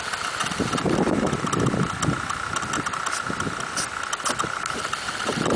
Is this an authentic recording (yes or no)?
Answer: yes